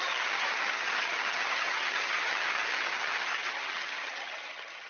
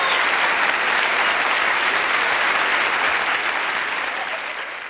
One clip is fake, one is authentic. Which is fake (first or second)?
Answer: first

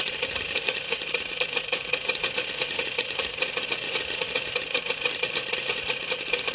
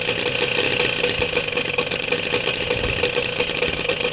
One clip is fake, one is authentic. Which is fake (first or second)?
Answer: first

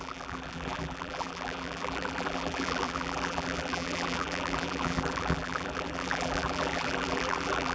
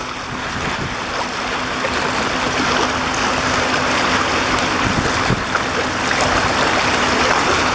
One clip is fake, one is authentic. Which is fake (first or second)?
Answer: first